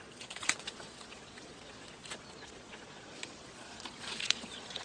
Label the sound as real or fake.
fake